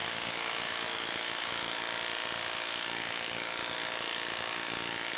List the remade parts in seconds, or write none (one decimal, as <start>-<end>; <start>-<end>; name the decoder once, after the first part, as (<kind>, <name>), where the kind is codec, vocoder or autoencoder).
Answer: 0.0-1.8 (autoencoder, DAC-VAE); 2.4-5.2